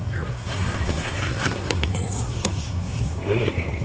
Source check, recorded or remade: remade